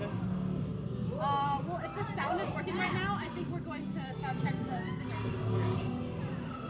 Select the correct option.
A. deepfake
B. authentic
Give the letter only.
B